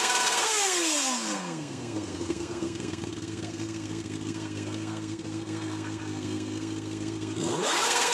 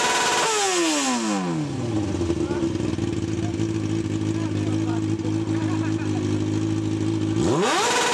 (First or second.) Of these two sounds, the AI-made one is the first